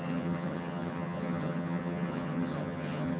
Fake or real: fake